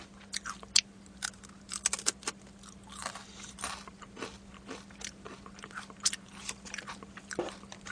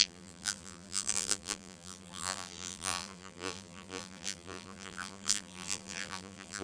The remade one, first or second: second